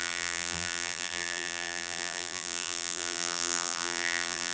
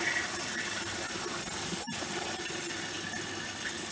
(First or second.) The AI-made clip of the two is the first